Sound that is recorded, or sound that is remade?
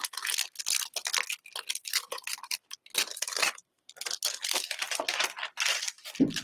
recorded